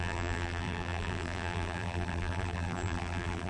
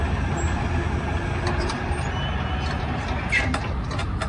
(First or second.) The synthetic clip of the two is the first